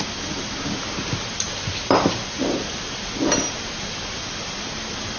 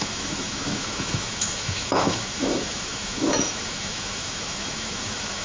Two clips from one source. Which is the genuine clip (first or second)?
first